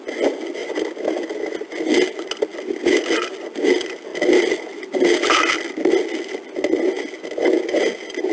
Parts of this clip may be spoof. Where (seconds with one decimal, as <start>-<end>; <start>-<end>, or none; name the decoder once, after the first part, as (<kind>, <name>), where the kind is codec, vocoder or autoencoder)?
none